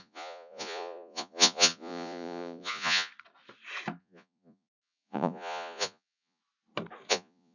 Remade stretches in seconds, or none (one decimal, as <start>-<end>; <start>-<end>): 0.0-3.1; 4.0-6.4; 7.1-7.5